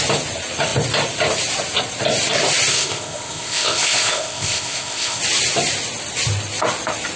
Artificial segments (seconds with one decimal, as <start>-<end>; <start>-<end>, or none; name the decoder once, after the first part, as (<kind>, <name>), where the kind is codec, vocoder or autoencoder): 2.7-5.2 (codec, ZipCodec)